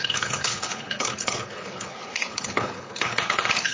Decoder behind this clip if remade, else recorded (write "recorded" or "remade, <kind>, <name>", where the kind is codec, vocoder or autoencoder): remade, codec, HILCodec